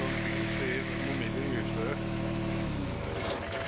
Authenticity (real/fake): fake